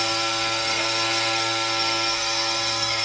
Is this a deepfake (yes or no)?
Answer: yes